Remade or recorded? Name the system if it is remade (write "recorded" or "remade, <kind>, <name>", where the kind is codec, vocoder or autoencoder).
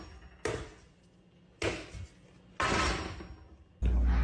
recorded